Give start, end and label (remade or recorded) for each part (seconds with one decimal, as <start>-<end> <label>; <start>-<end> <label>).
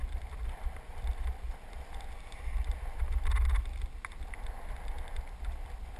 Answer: 0.0-6.0 recorded